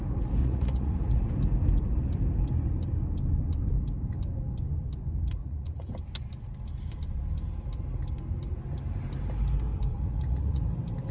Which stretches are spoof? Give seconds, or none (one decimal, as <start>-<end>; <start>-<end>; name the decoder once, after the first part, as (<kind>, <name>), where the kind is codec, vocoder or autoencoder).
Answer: 0.4-1.2 (vocoder, Vocos); 5.4-5.9; 9.9-10.6